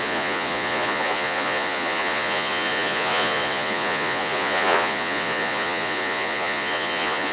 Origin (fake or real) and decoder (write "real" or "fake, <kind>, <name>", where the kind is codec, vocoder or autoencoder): fake, vocoder, Vocos